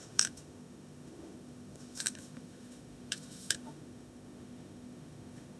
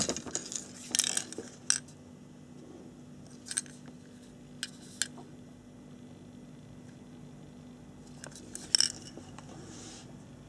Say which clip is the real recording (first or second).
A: second